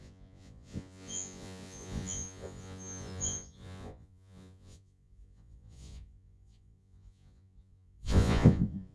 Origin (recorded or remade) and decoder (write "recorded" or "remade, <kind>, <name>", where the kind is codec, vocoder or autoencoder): remade, vocoder, Vocos